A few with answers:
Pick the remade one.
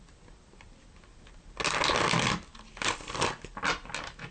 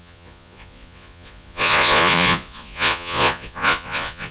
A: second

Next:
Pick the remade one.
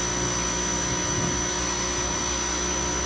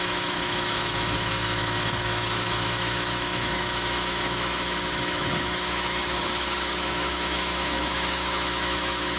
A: second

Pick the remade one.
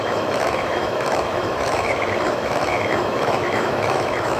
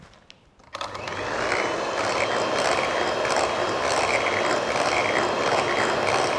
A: first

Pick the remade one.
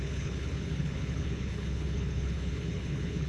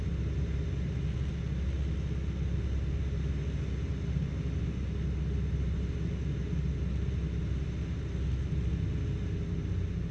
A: first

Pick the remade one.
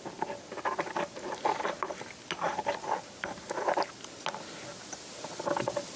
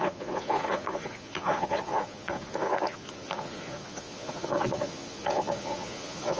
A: second